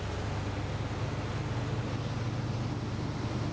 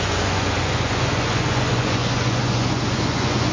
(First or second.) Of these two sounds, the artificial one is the second